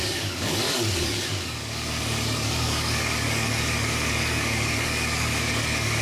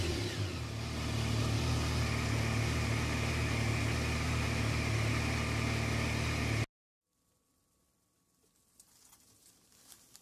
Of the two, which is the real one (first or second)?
second